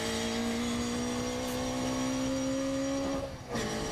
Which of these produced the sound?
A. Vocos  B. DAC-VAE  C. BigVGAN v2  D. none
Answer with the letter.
D